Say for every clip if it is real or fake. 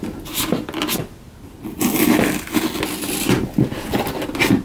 real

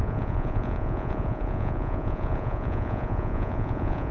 fake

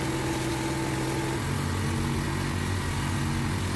real